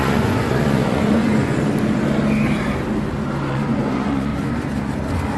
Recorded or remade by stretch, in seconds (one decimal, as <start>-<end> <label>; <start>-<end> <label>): 0.0-1.7 remade; 1.7-3.5 recorded; 3.5-4.3 remade; 4.3-5.4 recorded